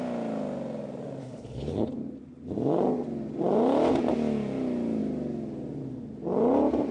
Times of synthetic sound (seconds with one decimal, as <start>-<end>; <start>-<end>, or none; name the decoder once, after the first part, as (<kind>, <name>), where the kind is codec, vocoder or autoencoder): 1.2-1.9 (codec, HILCodec)

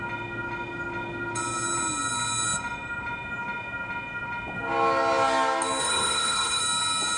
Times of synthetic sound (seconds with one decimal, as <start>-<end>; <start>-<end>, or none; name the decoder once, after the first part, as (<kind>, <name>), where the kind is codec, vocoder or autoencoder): 5.8-6.6 (codec, HILCodec)